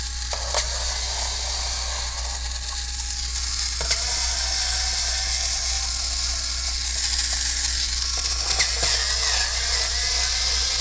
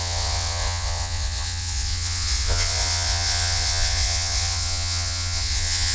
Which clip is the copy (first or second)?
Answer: second